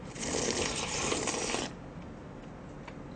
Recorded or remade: recorded